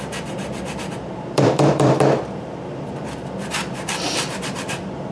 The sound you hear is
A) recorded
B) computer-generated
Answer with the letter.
B